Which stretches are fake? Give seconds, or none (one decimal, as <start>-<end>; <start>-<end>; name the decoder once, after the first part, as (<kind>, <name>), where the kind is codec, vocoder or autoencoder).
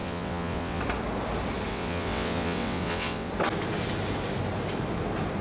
0.0-0.8 (vocoder, WaveNeXt); 1.7-3.3